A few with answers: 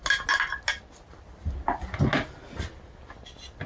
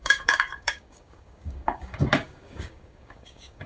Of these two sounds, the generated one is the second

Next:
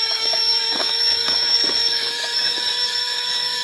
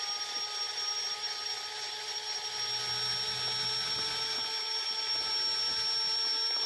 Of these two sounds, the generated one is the first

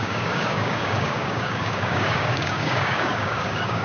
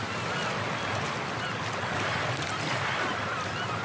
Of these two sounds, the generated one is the first